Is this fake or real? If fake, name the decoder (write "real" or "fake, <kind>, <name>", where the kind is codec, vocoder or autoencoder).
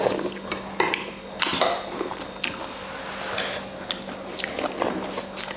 real